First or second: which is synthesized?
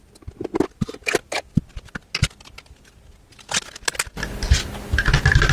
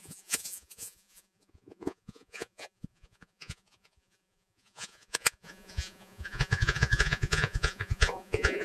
second